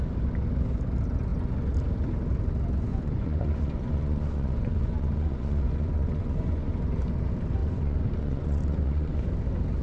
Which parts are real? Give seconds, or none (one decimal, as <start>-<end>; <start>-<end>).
0.0-2.9; 6.7-7.6; 9.2-9.8